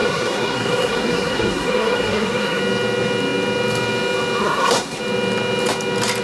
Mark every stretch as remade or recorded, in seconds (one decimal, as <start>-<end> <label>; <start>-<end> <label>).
0.0-2.6 remade; 2.6-4.4 recorded; 4.4-5.0 remade; 5.0-6.2 recorded